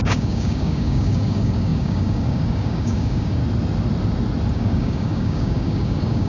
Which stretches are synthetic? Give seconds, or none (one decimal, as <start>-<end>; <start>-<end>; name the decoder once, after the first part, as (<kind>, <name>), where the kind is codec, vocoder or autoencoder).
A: 0.0-3.4 (codec, DAC); 4.5-6.3